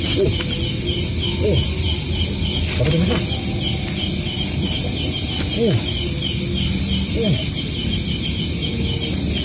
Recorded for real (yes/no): yes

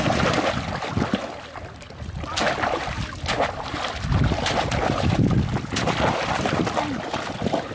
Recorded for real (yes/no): yes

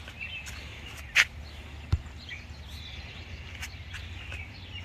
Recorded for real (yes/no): yes